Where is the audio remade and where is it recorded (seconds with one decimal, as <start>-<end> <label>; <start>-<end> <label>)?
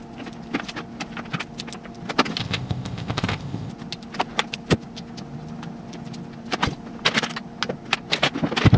0.0-2.4 recorded; 2.4-3.7 remade; 3.7-8.8 recorded